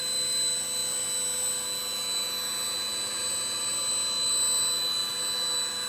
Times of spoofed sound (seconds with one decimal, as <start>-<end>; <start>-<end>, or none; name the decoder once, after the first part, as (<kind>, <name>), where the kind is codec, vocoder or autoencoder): none